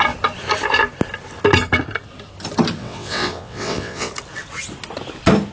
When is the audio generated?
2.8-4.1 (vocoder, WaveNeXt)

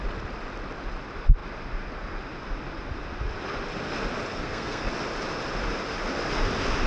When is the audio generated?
4.3-4.9 (codec, SNAC)

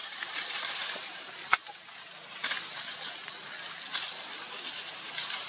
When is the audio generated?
0.0-1.6 (vocoder, BigVGAN v2); 4.9-5.5

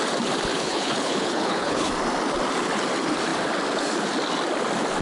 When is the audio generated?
0.5-1.9 (codec, HILCodec)

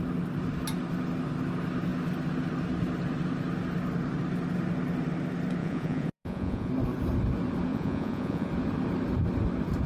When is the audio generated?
5.6-6.7 (vocoder, Vocos); 7.7-8.5